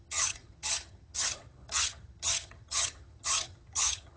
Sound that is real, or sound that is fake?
fake